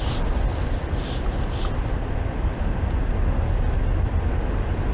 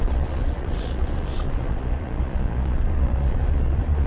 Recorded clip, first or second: first